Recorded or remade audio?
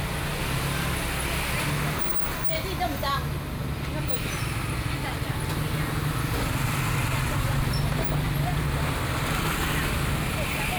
recorded